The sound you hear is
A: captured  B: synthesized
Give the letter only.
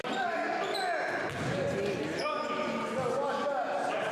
A